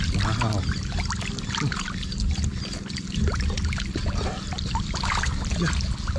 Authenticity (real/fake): real